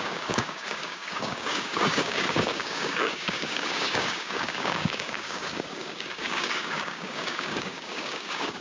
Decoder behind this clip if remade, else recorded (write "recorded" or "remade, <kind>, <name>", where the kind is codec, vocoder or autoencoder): remade, codec, DAC